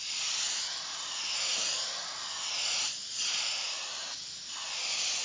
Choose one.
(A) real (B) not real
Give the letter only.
A